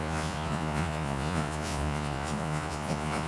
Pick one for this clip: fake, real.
fake